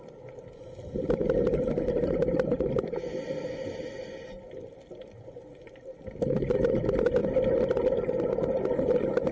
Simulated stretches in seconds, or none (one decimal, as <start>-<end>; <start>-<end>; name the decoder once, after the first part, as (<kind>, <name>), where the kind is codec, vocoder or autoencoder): none